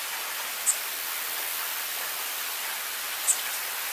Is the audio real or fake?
real